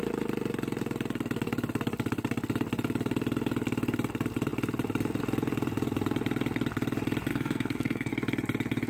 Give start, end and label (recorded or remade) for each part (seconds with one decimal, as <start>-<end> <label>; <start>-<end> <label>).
0.0-7.3 recorded; 7.3-8.1 remade; 8.1-8.9 recorded